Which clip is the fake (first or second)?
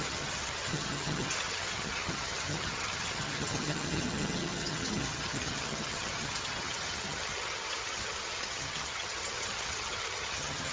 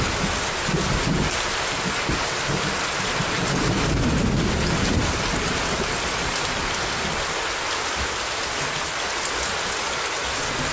first